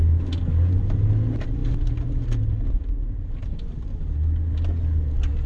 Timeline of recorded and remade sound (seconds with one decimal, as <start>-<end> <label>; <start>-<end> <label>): 0.0-5.5 recorded